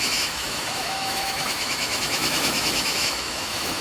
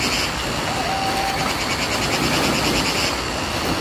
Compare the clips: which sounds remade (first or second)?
first